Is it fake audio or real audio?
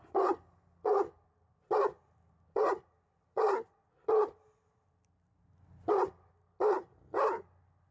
fake